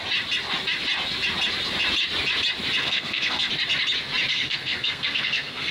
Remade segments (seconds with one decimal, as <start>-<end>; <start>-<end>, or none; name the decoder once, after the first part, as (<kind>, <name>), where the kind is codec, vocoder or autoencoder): 2.8-3.5 (codec, SNAC); 4.3-5.7